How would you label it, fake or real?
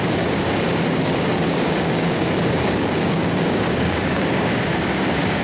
fake